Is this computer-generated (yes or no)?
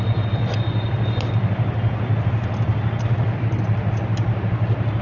no